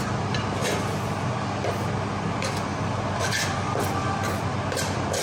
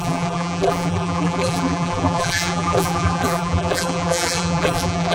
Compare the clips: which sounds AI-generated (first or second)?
second